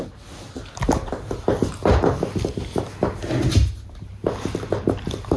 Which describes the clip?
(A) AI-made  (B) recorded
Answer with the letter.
B